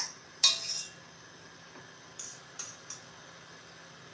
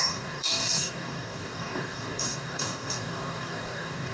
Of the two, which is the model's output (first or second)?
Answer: second